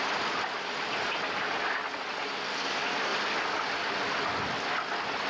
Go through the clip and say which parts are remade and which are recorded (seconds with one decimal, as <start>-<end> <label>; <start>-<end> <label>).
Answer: 0.0-3.1 remade; 3.1-5.3 recorded